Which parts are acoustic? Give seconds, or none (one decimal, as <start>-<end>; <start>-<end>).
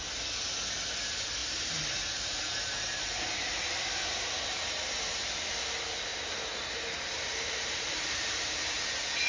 0.0-1.4; 3.0-6.1; 8.8-9.3